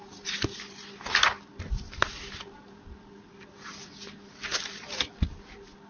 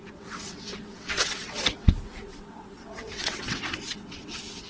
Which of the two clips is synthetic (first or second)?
second